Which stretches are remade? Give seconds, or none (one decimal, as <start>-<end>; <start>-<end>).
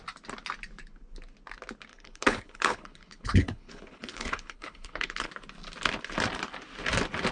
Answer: 1.9-5.3